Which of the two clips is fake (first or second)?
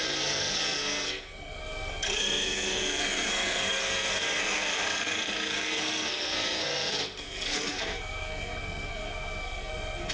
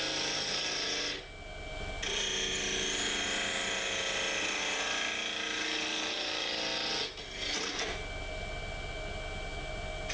first